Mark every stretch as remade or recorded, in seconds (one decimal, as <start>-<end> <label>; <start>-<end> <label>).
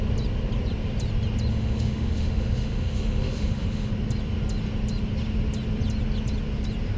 0.0-1.5 recorded; 1.5-3.9 remade; 3.9-7.0 recorded